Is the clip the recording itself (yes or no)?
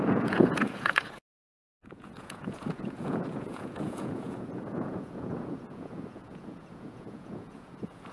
no